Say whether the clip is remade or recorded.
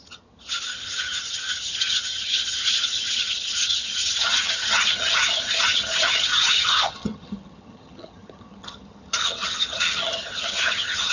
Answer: remade